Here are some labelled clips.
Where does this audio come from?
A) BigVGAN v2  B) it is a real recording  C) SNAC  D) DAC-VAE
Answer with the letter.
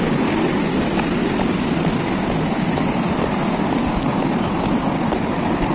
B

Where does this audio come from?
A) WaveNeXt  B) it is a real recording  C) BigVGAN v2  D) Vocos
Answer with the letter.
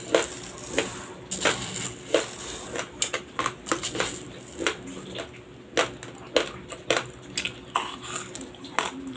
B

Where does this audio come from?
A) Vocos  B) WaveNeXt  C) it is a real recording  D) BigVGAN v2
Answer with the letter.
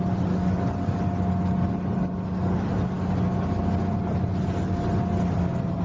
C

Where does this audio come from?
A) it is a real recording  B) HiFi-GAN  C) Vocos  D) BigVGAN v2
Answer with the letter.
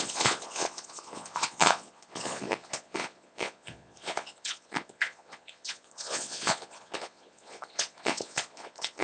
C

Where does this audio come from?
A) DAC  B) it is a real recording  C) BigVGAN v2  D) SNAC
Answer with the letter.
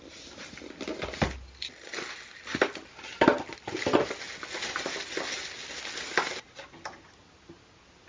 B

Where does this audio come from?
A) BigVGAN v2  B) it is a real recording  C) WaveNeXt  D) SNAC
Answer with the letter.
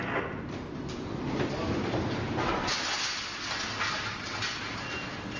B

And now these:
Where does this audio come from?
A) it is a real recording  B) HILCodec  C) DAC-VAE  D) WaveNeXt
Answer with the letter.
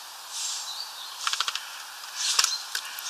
A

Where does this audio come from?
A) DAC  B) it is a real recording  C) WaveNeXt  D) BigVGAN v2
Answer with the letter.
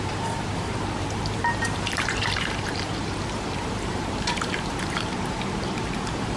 D